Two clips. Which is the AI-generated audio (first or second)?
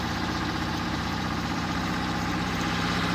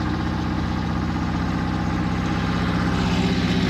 first